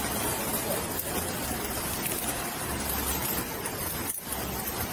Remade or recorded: recorded